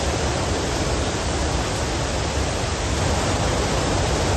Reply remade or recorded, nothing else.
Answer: recorded